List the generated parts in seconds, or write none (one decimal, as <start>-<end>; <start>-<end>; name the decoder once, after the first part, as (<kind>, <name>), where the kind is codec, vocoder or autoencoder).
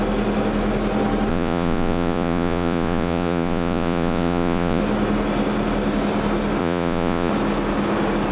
1.3-4.8 (vocoder, Vocos); 6.6-7.3